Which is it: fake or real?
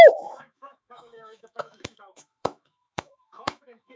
fake